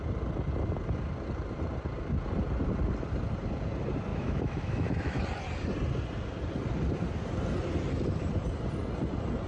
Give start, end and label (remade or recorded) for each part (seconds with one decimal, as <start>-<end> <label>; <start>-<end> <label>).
0.0-4.1 recorded; 4.1-5.2 remade; 5.2-9.5 recorded